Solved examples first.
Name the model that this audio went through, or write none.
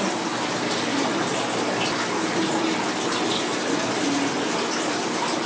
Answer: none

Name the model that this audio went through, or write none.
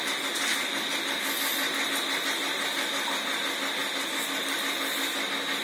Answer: none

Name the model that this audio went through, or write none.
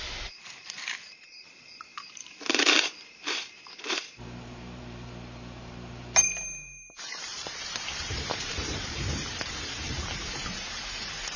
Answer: vocoder, BigVGAN v2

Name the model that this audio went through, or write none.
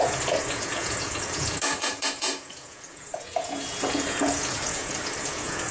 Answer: vocoder, Vocos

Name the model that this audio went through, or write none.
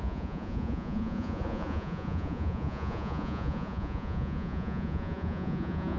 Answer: vocoder, Vocos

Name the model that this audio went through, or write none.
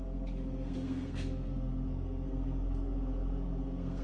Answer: codec, SNAC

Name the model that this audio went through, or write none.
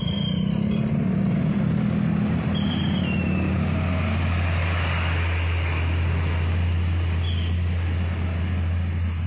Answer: none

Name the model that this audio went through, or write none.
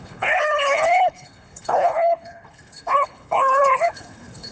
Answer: codec, HILCodec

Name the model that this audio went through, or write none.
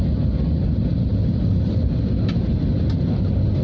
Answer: none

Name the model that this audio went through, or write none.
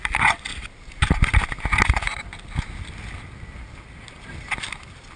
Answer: none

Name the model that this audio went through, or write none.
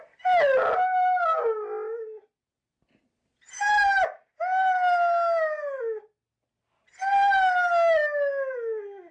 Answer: none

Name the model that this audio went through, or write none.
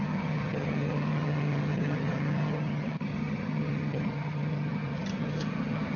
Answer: vocoder, HiFi-GAN